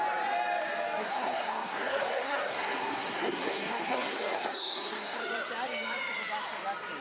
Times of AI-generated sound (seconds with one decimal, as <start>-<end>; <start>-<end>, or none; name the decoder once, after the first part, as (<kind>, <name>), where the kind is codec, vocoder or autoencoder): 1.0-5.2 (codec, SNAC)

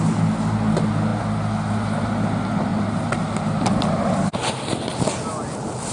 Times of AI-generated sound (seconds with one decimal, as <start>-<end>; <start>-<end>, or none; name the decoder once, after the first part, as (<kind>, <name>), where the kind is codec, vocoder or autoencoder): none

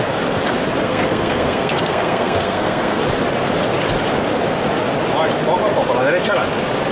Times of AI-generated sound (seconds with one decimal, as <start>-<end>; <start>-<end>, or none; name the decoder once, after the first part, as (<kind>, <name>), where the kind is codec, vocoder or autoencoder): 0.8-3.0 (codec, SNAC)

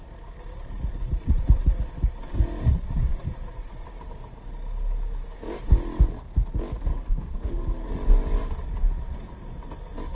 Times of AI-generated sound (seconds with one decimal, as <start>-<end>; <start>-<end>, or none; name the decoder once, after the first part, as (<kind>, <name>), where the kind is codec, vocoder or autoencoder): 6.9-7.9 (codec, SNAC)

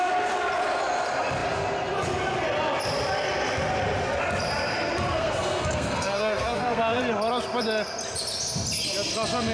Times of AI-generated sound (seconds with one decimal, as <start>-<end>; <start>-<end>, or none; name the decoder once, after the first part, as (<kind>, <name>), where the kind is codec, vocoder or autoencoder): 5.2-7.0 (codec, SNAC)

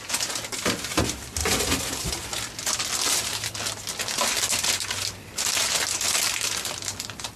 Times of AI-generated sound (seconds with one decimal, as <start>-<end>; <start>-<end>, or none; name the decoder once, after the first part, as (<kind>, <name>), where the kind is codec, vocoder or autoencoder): none

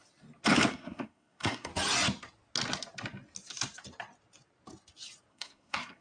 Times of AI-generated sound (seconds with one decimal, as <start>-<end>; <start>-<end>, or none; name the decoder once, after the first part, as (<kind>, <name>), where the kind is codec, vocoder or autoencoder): 0.7-1.7 (codec, SNAC); 5.3-6.0